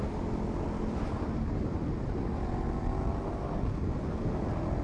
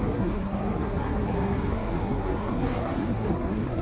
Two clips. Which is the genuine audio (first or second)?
first